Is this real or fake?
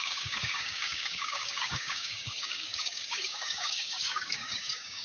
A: fake